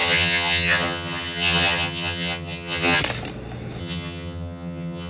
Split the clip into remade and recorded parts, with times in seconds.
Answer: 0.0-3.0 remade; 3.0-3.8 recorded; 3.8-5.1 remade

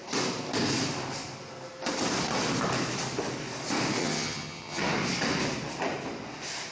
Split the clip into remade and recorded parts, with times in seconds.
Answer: 0.0-4.0 recorded; 4.0-4.8 remade; 4.8-6.7 recorded